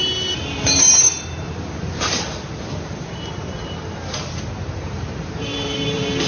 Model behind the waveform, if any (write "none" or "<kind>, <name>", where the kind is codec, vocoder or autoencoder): vocoder, BigVGAN v2